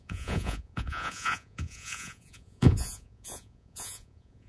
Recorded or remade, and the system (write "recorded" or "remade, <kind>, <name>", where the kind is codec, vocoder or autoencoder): remade, vocoder, Vocos